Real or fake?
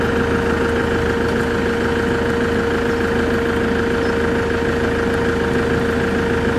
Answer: real